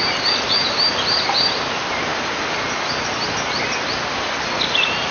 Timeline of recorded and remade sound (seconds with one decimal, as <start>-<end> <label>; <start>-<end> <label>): 0.0-5.1 recorded